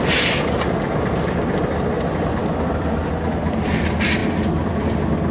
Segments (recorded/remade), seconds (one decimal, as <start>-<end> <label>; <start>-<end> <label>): 0.0-5.3 recorded